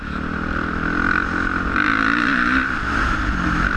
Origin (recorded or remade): recorded